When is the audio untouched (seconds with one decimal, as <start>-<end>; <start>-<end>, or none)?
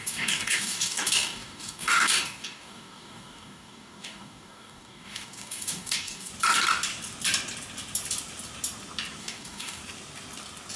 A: 6.3-9.2; 9.8-10.8